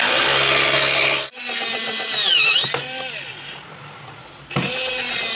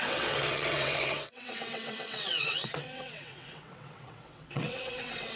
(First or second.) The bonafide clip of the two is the first